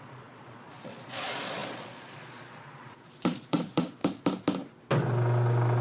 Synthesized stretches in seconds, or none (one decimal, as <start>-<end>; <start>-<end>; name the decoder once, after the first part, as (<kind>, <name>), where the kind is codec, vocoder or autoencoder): 0.0-4.0 (vocoder, Vocos)